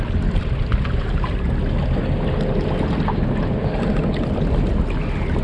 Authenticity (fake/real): real